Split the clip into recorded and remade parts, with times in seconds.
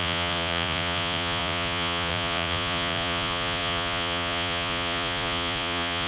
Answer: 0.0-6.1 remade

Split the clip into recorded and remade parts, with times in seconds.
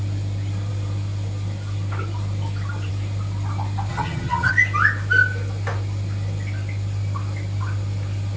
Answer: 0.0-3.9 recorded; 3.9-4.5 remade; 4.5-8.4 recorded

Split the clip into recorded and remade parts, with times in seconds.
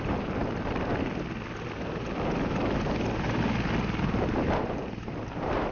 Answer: 0.0-0.4 remade; 0.4-3.8 recorded; 3.8-5.7 remade